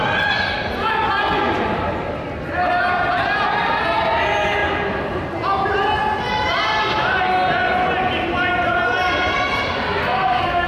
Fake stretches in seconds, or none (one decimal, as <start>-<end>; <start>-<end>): 10.0-10.7